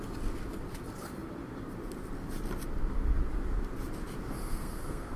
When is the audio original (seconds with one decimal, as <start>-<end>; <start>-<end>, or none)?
0.0-4.5